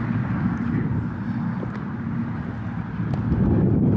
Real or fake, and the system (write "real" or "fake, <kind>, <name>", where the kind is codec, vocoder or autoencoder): real